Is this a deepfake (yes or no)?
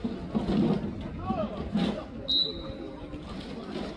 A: no